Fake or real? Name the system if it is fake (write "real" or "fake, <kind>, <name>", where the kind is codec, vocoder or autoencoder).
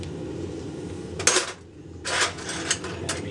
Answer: real